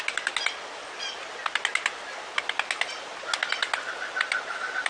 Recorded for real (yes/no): yes